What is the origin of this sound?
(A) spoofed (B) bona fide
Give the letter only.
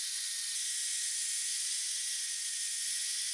A